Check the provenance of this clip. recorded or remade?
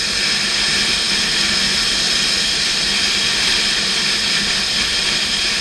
recorded